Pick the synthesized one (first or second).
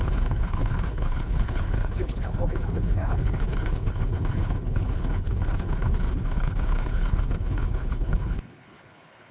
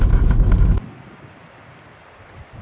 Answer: first